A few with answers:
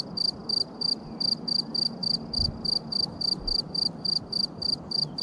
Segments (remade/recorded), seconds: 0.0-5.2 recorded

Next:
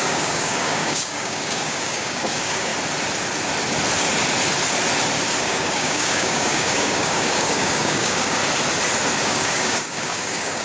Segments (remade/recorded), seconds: 0.0-2.7 remade; 2.7-5.4 recorded; 5.4-8.4 remade; 8.4-9.2 recorded; 9.2-10.6 remade